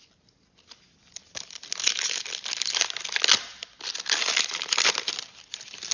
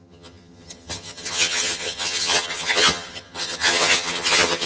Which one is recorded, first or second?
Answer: first